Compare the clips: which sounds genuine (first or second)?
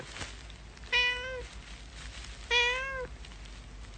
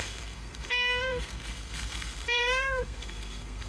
first